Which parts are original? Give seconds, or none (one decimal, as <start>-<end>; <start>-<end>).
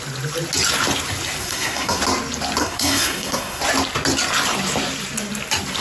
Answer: 0.0-1.4; 2.0-2.6; 3.6-5.8